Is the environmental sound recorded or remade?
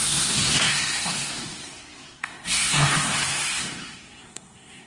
remade